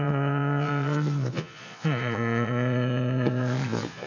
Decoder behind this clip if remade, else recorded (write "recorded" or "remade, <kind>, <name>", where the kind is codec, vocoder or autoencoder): remade, vocoder, Vocos